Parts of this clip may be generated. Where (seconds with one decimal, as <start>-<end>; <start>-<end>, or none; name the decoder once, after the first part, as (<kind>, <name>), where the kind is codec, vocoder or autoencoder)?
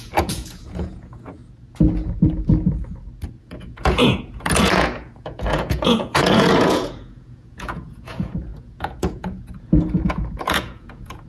0.0-1.4 (vocoder, Vocos); 3.4-11.3